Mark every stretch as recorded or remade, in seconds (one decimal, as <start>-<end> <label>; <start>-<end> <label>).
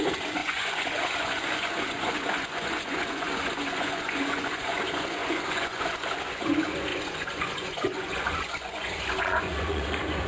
0.0-10.3 remade